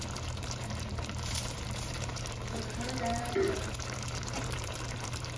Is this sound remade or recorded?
remade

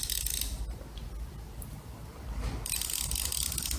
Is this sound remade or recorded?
recorded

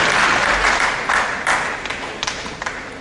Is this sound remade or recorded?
recorded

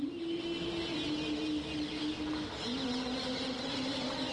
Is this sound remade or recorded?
recorded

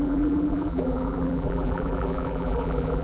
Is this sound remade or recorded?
remade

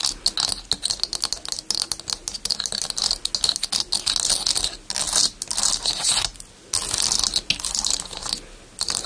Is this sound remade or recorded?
recorded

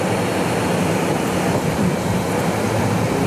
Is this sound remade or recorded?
recorded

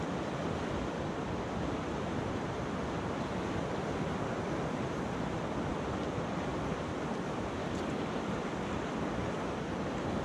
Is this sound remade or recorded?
recorded